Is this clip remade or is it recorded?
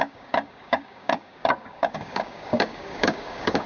remade